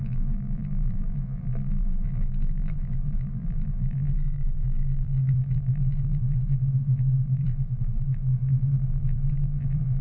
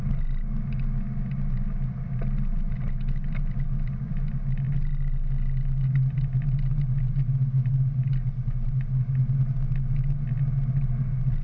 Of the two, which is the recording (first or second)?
second